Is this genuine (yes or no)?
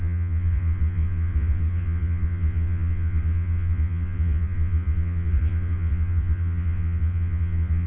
no